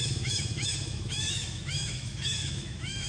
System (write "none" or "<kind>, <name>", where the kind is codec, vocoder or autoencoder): autoencoder, DAC-VAE